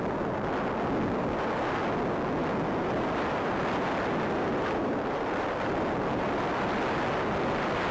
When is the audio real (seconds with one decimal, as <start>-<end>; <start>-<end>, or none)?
0.0-2.4; 6.6-7.9